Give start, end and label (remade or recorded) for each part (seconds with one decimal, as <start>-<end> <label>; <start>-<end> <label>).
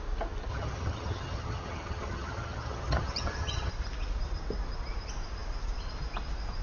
0.0-0.5 recorded; 0.5-3.7 remade; 3.7-6.6 recorded